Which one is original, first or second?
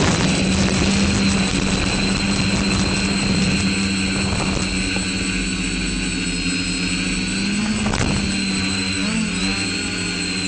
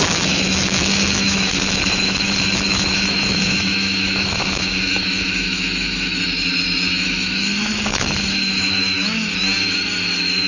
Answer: first